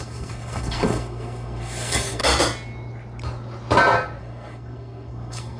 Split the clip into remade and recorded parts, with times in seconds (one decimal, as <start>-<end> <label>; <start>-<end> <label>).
0.0-2.2 remade; 2.2-4.2 recorded; 4.2-5.6 remade